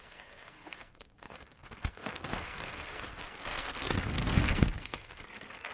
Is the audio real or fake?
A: fake